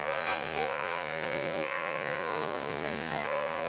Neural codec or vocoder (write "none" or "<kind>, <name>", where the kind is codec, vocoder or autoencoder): vocoder, Vocos